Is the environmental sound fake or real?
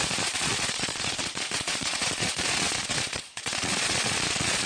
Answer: fake